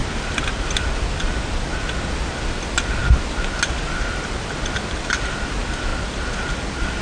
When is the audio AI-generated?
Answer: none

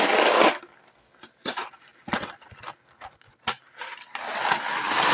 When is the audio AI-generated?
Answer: none

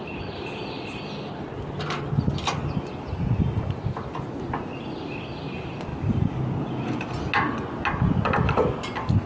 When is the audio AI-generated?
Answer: none